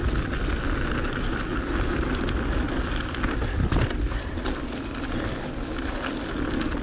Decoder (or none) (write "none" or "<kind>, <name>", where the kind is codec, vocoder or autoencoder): none